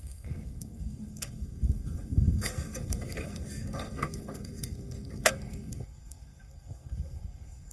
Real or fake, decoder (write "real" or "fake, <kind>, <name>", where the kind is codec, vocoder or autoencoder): fake, codec, SNAC